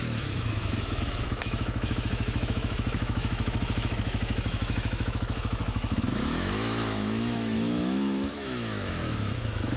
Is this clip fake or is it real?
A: fake